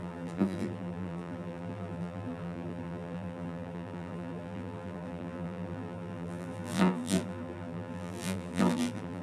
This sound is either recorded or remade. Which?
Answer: remade